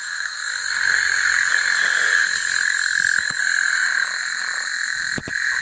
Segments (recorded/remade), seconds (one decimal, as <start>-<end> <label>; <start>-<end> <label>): 0.0-3.4 remade; 3.4-5.6 recorded